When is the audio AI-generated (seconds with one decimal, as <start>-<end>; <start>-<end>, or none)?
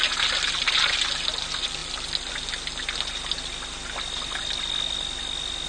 none